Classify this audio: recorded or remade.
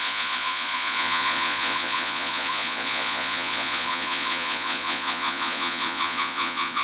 remade